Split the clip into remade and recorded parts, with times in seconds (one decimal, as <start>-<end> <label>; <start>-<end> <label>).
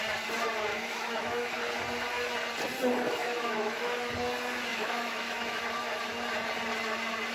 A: 0.0-0.7 recorded; 0.7-1.6 remade; 1.6-3.2 recorded; 3.2-4.1 remade; 4.1-4.7 recorded; 4.7-5.6 remade; 5.6-7.3 recorded